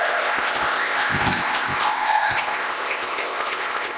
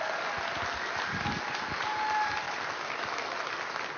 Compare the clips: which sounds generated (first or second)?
first